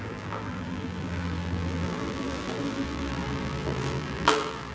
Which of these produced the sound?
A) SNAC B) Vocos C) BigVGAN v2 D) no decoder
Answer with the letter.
C